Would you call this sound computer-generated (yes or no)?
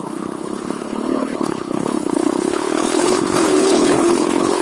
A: yes